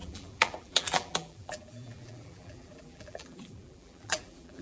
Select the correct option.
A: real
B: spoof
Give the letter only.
B